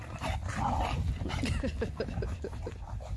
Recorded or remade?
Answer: recorded